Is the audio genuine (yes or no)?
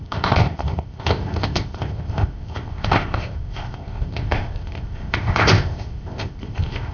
no